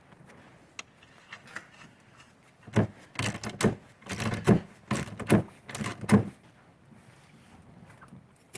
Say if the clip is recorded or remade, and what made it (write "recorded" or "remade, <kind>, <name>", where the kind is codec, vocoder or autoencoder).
recorded